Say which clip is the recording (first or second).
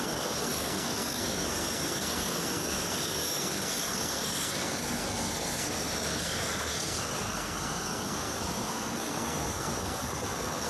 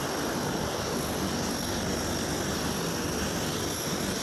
second